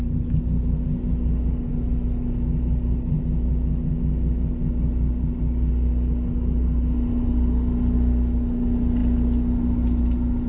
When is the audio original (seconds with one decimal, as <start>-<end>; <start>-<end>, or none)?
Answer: 0.0-10.5